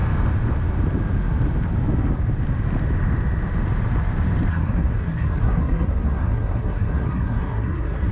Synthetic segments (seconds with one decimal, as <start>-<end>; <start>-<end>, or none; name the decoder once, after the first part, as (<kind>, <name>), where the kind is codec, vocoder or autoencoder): 4.5-8.1 (codec, SNAC)